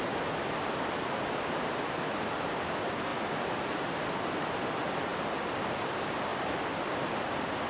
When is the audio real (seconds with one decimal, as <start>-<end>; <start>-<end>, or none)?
3.1-4.4; 5.1-5.6